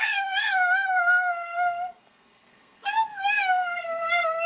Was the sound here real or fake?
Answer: fake